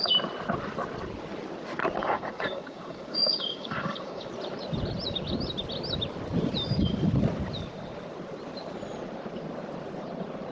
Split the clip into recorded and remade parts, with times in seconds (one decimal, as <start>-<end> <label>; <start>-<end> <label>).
0.0-2.0 recorded; 2.0-4.3 remade; 4.3-10.5 recorded